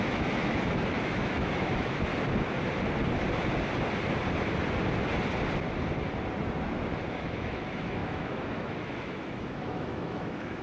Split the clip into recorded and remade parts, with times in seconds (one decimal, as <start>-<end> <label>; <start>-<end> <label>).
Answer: 0.0-2.1 remade; 2.1-7.1 recorded; 7.1-10.6 remade